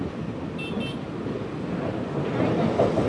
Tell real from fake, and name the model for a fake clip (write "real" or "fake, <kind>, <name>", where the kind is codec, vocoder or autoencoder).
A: real